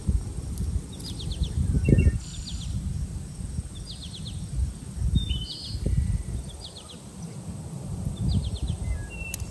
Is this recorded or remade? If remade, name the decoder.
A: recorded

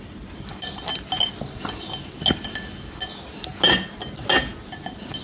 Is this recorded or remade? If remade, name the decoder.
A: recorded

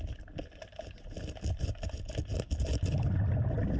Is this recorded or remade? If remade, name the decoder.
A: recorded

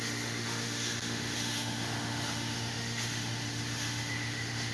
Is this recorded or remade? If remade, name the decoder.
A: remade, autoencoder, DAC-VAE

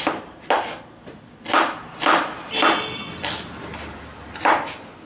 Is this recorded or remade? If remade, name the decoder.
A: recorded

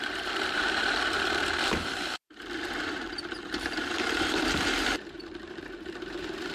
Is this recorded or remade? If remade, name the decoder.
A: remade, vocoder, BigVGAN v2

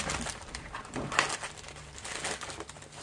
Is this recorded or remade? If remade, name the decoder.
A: remade, vocoder, BigVGAN v2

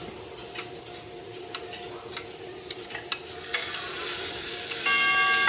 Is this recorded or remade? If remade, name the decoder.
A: recorded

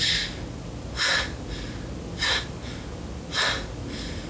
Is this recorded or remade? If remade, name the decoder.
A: recorded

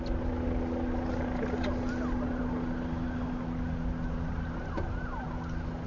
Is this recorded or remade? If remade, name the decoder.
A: recorded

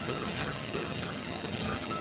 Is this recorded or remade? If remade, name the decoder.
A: remade, vocoder, HiFi-GAN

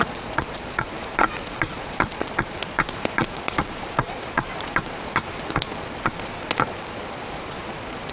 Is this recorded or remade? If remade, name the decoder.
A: remade, vocoder, Vocos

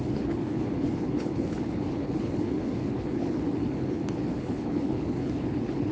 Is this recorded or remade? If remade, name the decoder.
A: remade, codec, HILCodec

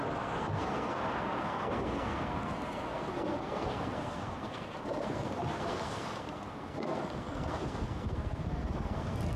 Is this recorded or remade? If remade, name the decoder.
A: remade, codec, SNAC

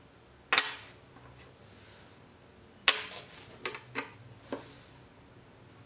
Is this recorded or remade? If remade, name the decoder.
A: recorded